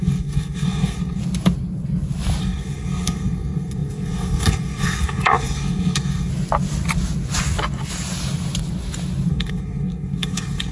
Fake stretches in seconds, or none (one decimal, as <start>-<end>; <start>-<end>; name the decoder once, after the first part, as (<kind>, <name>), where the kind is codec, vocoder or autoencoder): 0.0-1.2 (codec, SNAC); 2.4-6.3; 9.3-10.7